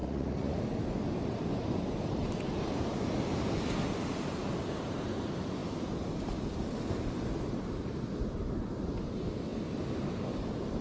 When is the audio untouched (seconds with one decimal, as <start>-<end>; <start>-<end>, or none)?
0.6-10.8